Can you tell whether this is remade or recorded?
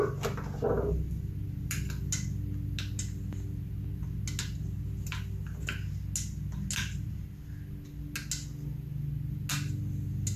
recorded